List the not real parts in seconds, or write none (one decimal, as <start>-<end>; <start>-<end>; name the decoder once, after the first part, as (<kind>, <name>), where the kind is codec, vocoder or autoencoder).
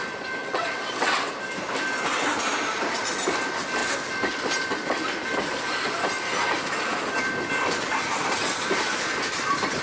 0.4-1.3 (vocoder, WaveNeXt)